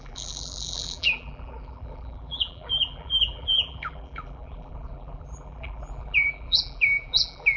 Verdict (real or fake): fake